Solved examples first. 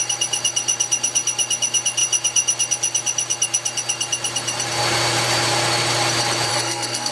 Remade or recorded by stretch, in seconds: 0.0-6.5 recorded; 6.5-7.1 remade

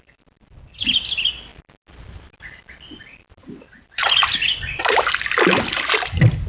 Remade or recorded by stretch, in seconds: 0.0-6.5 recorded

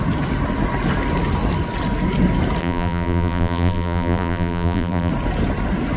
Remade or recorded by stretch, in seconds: 0.0-2.6 recorded; 2.6-5.1 remade; 5.1-6.0 recorded